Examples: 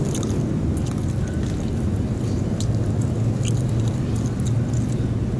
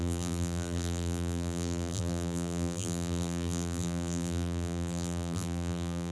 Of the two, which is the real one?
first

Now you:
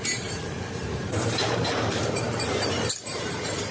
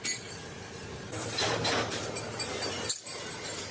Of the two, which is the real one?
second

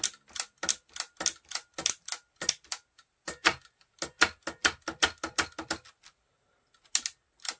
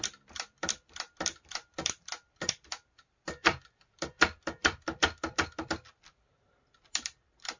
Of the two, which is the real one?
first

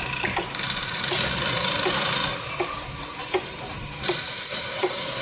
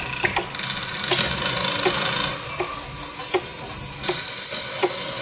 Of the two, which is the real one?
second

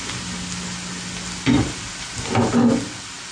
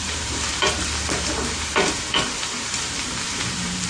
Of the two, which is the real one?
first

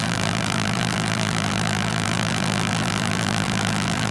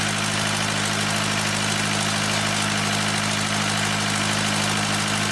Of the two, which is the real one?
second